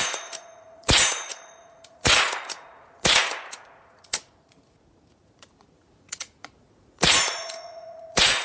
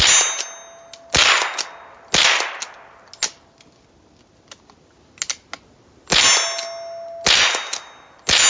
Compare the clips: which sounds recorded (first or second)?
second